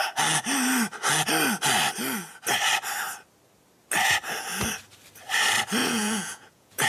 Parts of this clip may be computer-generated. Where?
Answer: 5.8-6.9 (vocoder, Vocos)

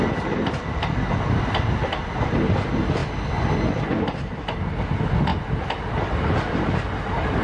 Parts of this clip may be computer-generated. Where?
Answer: none

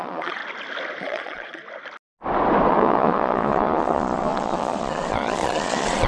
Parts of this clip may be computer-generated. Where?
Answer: 0.0-0.4 (vocoder, Vocos); 1.0-1.6; 2.7-6.1

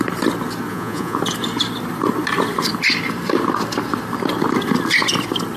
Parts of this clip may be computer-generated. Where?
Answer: 0.7-1.2 (vocoder, Vocos)